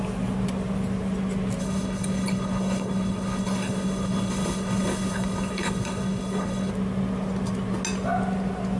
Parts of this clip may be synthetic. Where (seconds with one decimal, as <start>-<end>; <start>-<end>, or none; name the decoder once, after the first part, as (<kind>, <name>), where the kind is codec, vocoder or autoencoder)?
1.6-6.7 (codec, HILCodec)